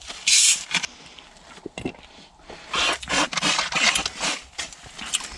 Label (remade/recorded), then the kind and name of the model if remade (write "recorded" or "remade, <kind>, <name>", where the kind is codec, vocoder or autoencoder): recorded